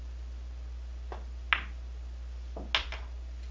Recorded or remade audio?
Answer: recorded